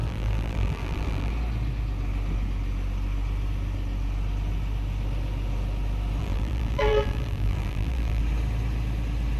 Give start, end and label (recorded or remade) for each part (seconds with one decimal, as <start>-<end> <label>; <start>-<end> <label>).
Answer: 0.0-1.3 remade; 1.3-6.2 recorded; 6.2-8.2 remade; 8.2-9.4 recorded